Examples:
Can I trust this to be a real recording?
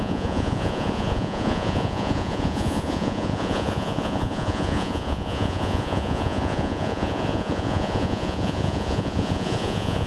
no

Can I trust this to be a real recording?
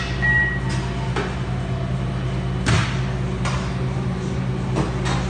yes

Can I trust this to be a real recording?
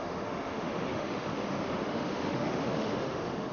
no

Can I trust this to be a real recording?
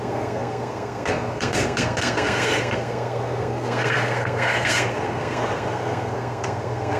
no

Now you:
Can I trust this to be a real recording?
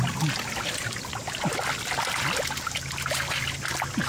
yes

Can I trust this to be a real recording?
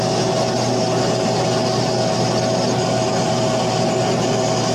yes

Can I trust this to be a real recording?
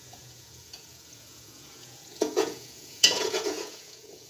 no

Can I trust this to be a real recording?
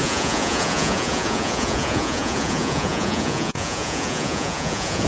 no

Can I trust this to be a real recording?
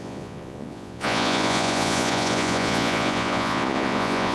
no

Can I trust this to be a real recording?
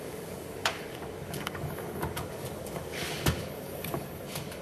no